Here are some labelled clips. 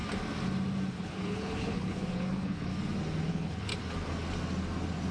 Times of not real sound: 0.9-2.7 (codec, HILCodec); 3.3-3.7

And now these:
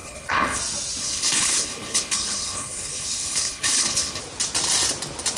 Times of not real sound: 0.0-0.6 (codec, HILCodec); 1.0-4.2

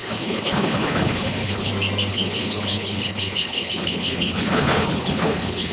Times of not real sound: 0.0-1.7 (codec, HILCodec); 2.1-5.7

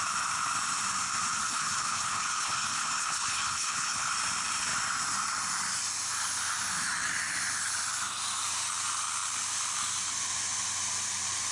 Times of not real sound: 1.4-4.1 (codec, HILCodec)

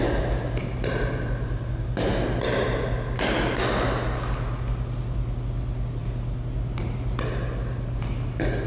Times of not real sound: none

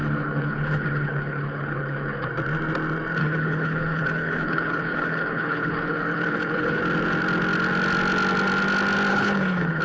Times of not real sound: 0.0-2.3 (codec, HILCodec); 3.2-6.8; 9.1-9.8

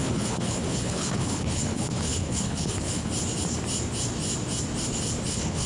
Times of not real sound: 0.0-3.1 (codec, HILCodec); 5.3-5.7

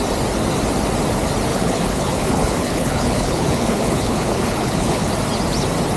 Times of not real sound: 1.5-5.1 (codec, HILCodec)